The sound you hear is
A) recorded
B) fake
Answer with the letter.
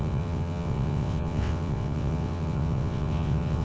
B